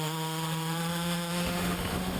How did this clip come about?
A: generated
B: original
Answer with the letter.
A